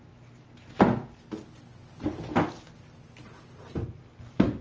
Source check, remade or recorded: recorded